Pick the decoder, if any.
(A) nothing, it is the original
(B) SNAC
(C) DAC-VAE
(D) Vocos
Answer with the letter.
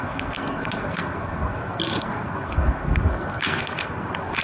B